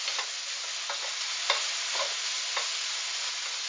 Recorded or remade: recorded